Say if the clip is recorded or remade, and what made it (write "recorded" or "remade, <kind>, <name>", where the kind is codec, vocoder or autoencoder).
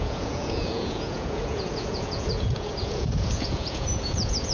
remade, vocoder, Vocos